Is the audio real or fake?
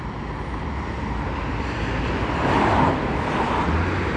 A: real